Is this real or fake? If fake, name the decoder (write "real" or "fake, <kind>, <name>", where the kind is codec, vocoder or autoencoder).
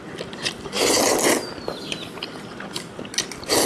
real